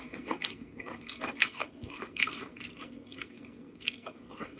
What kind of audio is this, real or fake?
fake